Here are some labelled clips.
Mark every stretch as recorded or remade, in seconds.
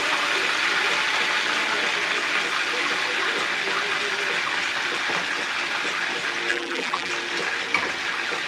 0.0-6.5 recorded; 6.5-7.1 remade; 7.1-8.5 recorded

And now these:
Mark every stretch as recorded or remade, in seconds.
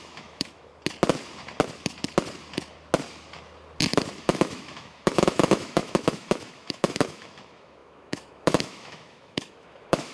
0.0-0.7 remade; 0.7-4.2 recorded; 4.2-10.1 remade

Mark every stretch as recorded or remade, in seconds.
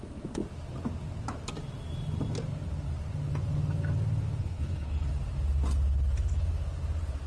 0.0-4.4 recorded; 4.4-5.1 remade; 5.1-7.3 recorded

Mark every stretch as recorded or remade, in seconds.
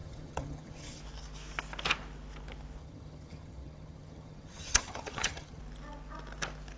0.0-1.0 remade; 1.0-2.8 recorded; 2.8-5.6 remade; 5.6-6.8 recorded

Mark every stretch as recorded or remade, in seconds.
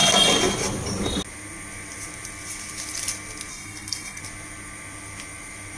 0.0-3.5 recorded; 3.5-4.2 remade; 4.2-5.8 recorded